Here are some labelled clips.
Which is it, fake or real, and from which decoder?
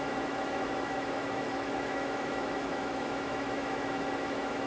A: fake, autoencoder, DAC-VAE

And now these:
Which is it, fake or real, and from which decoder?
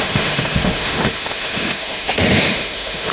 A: fake, autoencoder, DAC-VAE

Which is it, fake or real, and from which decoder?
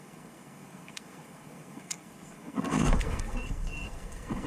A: fake, codec, SNAC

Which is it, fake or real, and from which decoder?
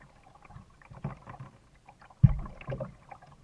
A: real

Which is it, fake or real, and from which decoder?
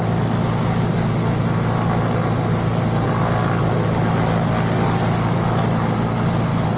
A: real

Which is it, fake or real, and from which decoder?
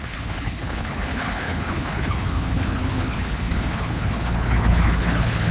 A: fake, codec, HILCodec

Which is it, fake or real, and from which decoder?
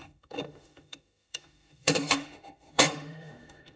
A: fake, autoencoder, DAC-VAE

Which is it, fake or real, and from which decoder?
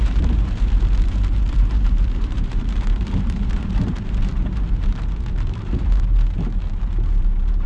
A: fake, vocoder, BigVGAN v2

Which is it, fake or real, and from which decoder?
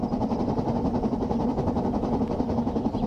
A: fake, vocoder, BigVGAN v2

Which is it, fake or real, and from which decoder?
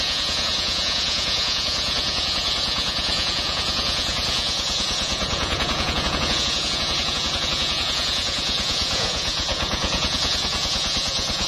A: fake, vocoder, Vocos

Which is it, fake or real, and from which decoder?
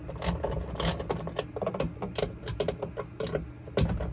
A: real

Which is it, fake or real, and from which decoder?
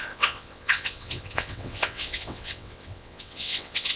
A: fake, vocoder, WaveNeXt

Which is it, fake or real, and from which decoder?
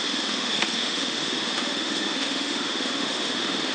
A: fake, autoencoder, DAC-VAE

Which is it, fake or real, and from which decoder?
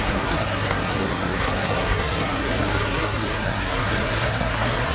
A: fake, codec, SNAC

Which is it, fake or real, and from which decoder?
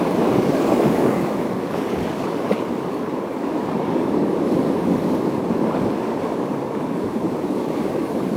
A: fake, codec, DAC